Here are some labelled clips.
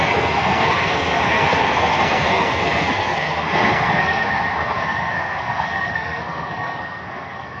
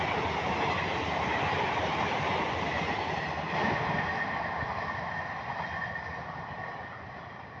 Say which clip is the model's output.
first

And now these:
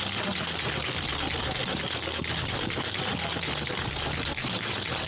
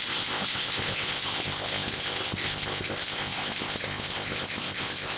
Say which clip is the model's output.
second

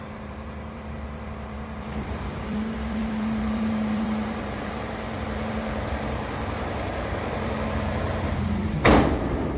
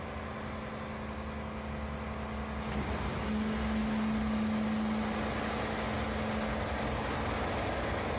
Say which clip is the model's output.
first